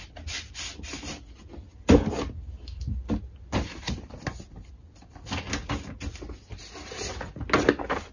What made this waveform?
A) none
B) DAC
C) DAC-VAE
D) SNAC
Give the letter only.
A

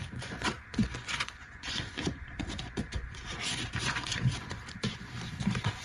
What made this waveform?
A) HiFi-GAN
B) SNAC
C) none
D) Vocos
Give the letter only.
D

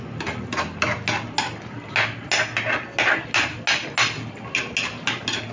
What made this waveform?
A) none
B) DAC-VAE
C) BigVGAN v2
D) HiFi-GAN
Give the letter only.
A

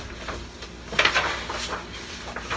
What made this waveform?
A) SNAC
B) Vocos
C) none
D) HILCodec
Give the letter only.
C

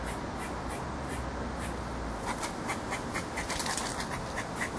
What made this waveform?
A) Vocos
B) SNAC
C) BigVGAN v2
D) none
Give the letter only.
D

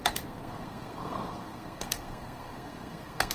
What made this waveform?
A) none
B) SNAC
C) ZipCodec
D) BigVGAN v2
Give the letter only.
B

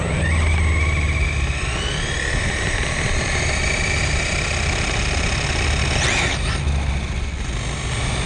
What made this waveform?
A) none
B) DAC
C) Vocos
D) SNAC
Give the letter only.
A